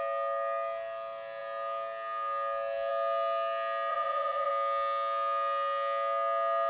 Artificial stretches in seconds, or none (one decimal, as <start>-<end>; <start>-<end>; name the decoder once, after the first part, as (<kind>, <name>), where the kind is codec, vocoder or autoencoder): 3.9-4.5 (vocoder, Vocos)